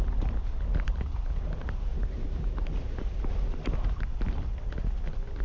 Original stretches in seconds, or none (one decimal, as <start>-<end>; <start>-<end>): 0.0-5.4